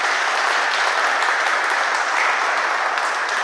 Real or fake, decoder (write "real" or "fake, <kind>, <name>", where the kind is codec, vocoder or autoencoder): real